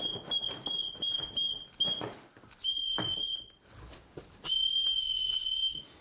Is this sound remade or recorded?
recorded